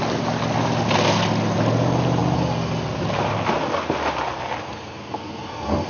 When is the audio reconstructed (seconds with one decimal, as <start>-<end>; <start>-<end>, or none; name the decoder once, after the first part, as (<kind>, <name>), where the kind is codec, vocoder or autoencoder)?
4.6-5.9 (codec, SNAC)